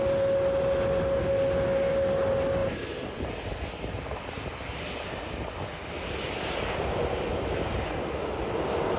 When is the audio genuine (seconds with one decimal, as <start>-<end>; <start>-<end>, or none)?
0.0-2.6; 3.3-9.0